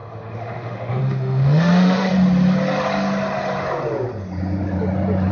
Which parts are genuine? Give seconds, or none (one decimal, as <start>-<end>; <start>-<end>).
2.1-5.3